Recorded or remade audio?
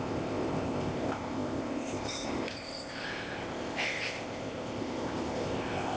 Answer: remade